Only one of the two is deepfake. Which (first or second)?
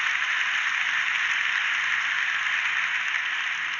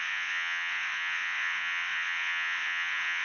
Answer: second